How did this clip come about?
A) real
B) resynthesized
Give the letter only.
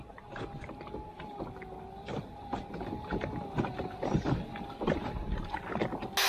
A